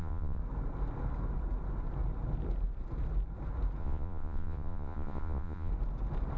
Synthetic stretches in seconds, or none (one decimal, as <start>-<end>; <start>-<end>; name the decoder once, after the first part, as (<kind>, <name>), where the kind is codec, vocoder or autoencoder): 0.0-0.4 (vocoder, Vocos); 3.8-5.7